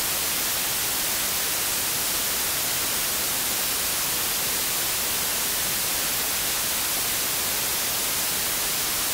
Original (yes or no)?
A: yes